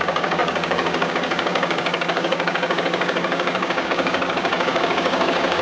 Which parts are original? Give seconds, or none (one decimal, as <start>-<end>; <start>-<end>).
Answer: none

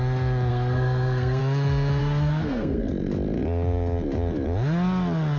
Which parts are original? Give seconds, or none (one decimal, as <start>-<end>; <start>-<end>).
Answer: 0.0-0.5; 1.4-2.0; 2.9-5.4

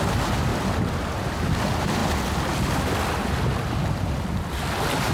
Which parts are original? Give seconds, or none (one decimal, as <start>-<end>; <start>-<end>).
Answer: 0.0-5.1

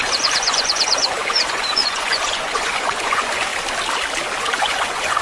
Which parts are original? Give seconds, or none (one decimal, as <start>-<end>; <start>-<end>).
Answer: 3.5-4.4